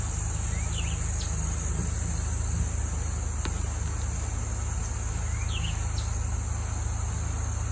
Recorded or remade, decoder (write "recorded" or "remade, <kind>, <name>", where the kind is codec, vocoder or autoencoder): recorded